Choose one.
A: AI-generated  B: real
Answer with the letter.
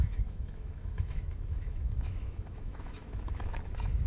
A